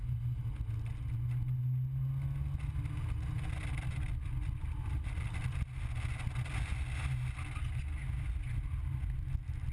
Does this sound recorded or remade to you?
recorded